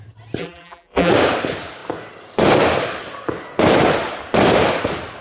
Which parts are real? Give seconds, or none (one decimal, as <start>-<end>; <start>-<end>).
0.0-0.4; 1.1-5.2